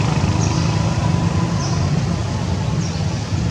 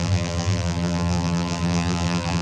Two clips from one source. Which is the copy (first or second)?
second